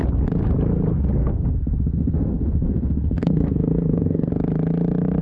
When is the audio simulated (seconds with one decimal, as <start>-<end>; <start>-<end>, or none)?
1.2-4.3